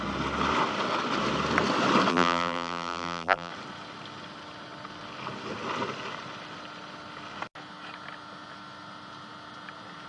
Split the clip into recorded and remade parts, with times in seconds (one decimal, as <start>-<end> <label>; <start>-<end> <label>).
0.0-2.1 recorded; 2.1-3.5 remade; 3.5-10.1 recorded